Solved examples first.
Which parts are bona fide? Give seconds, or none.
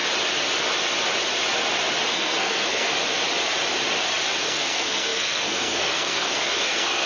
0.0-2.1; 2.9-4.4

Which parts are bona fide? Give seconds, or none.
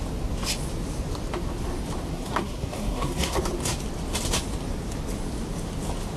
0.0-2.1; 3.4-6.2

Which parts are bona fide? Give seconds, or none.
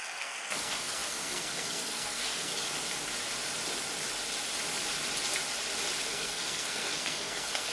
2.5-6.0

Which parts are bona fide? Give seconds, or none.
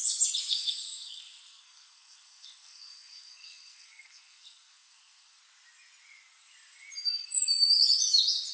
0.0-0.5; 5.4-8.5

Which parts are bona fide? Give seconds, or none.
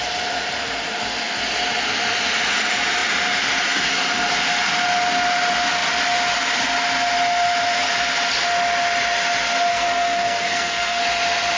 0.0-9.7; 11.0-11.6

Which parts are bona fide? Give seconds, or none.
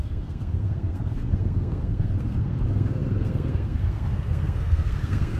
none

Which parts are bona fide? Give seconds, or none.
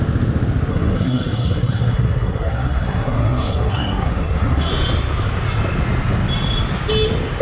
0.0-0.7; 4.7-7.4